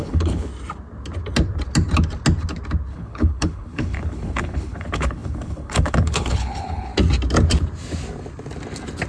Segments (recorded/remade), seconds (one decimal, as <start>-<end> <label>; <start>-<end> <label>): 0.0-0.5 remade; 0.5-2.9 recorded; 2.9-6.9 remade; 6.9-9.1 recorded